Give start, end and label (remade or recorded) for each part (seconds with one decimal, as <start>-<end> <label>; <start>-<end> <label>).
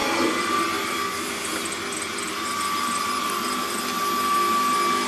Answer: 0.0-5.1 recorded